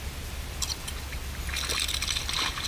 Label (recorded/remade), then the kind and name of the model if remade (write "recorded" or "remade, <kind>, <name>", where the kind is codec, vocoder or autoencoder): recorded